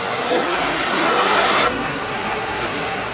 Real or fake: fake